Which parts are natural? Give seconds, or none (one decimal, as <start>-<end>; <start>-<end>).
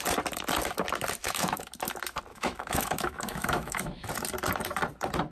0.0-1.2; 1.7-2.3; 4.1-5.3